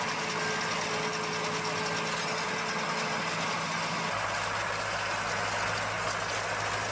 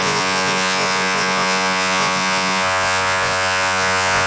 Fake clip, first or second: second